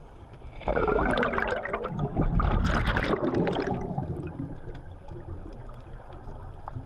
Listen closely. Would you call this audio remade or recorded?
recorded